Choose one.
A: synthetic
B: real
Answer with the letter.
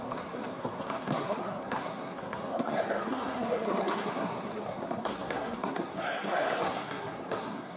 A